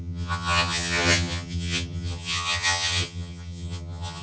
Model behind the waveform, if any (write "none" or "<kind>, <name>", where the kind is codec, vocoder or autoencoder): vocoder, HiFi-GAN